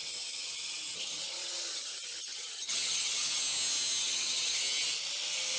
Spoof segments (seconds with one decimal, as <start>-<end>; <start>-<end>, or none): 0.0-3.4; 4.0-4.6